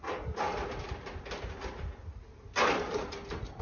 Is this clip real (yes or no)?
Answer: yes